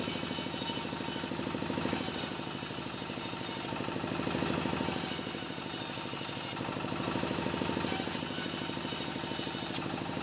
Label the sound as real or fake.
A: real